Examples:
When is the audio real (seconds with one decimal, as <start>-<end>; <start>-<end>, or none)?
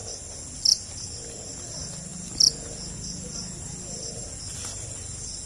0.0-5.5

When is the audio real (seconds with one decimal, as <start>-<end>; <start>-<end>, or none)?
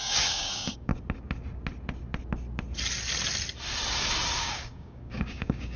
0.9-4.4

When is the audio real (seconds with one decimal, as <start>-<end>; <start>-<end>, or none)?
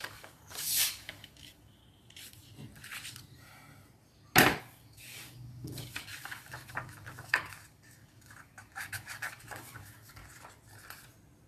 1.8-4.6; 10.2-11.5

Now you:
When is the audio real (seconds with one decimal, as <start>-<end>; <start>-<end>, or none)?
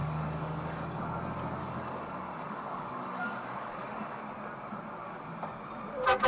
1.0-1.6; 4.2-6.3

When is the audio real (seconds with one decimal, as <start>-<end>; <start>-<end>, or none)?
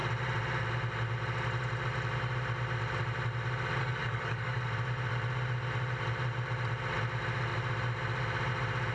0.0-3.8; 4.6-8.9